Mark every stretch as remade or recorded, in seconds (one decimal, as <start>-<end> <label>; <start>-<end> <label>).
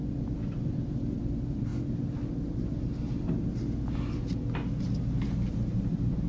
0.0-1.7 remade; 1.7-5.5 recorded; 5.5-6.3 remade